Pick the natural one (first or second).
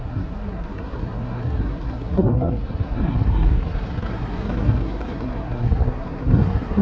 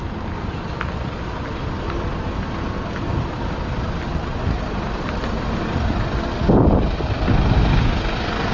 second